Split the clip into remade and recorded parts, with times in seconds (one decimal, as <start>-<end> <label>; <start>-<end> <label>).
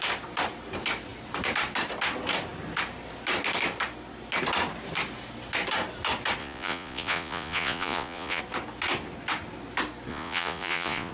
0.0-6.4 recorded; 6.4-8.4 remade; 8.4-10.1 recorded; 10.1-11.1 remade